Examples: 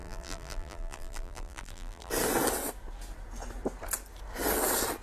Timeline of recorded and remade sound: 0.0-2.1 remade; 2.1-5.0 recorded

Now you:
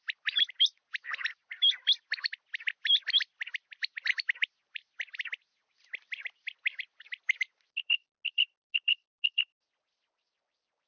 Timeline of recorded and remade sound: 0.0-10.9 recorded

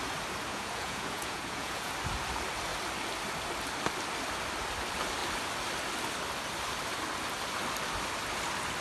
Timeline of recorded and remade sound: 0.0-0.5 recorded; 0.5-1.9 remade; 1.9-8.8 recorded

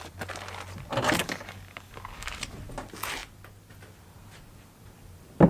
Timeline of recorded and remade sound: 0.0-1.2 recorded; 1.2-2.3 remade; 2.3-5.5 recorded